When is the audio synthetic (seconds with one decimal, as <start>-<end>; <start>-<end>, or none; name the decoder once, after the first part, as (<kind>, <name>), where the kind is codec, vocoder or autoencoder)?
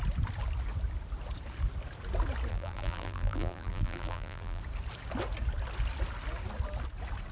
2.5-4.6 (vocoder, BigVGAN v2)